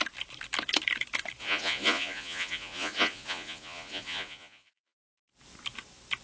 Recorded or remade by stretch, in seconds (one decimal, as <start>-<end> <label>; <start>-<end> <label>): 0.0-1.4 recorded; 1.4-5.0 remade; 5.0-6.2 recorded